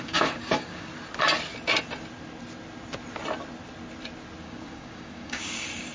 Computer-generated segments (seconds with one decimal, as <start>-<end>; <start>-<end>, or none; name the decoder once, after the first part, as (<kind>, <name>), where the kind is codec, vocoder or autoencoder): 0.0-0.9 (codec, DAC); 4.4-5.9